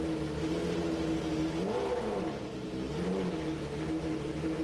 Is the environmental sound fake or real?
real